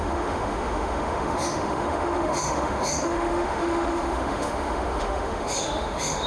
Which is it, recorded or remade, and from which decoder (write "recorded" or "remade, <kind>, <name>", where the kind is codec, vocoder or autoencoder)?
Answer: remade, autoencoder, DAC-VAE